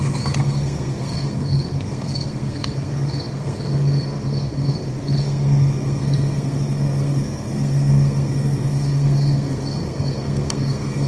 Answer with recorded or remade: remade